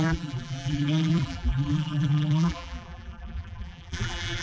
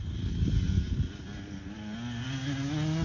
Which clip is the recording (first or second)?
second